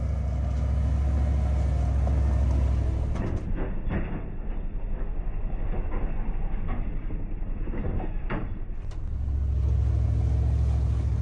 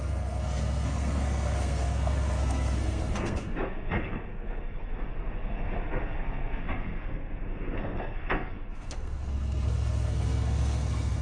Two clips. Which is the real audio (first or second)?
first